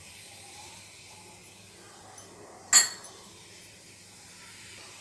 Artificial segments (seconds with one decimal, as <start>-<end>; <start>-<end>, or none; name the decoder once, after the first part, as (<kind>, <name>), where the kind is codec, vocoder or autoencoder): none